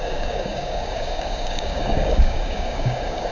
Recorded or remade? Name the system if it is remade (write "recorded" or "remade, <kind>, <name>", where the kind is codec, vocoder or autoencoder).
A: remade, codec, DAC